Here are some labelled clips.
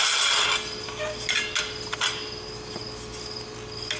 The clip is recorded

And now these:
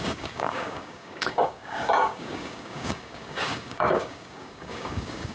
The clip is remade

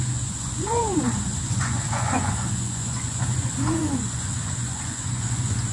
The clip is remade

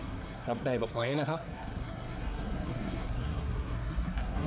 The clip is remade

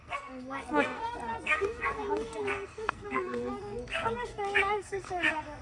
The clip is remade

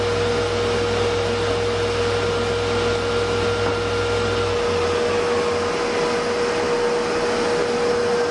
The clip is recorded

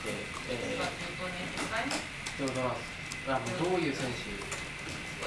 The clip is recorded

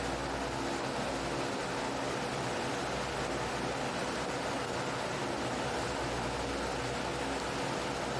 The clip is recorded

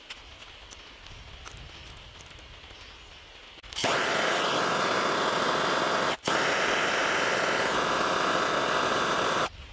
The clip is recorded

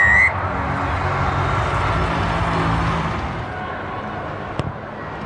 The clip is recorded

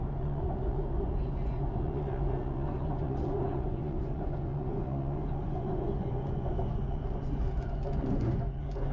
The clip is remade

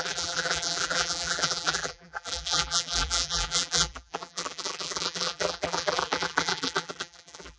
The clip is remade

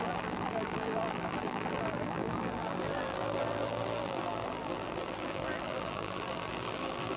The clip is remade